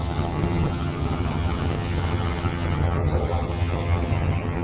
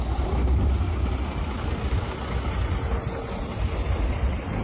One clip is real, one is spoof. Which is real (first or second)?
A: second